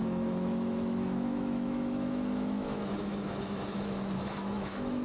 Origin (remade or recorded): remade